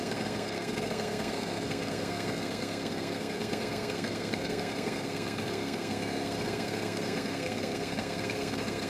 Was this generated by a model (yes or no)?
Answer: yes